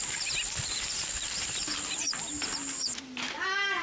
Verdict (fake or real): real